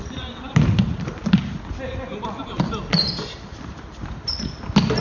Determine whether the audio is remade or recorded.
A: recorded